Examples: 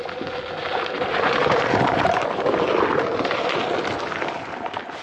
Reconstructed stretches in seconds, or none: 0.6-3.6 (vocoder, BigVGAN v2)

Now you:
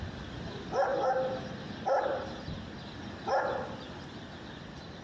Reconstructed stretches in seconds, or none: none

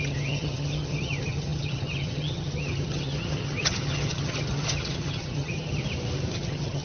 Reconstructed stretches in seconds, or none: 0.0-5.8 (vocoder, HiFi-GAN); 6.3-6.8

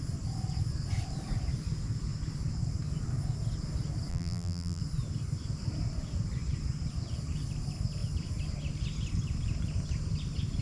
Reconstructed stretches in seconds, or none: 4.1-4.8 (vocoder, BigVGAN v2)

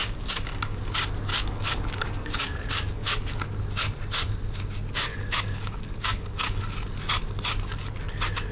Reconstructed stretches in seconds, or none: 0.0-0.8 (codec, DAC); 1.3-3.4; 5.1-6.6